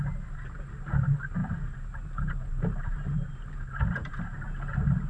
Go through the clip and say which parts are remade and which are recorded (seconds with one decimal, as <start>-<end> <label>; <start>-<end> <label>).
0.0-1.4 recorded; 1.4-4.1 remade; 4.1-5.1 recorded